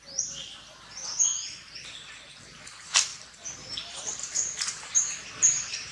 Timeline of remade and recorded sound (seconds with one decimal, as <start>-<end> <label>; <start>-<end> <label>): 0.0-5.9 recorded